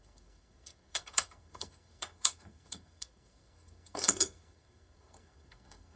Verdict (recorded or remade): remade